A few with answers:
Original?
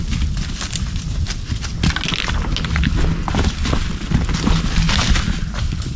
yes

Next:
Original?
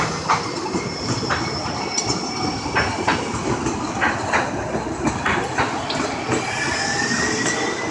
yes